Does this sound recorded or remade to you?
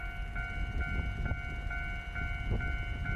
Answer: recorded